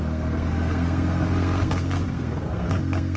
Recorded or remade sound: remade